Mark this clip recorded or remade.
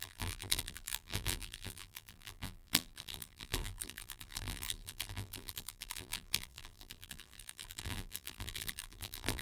remade